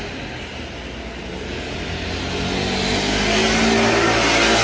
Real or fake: real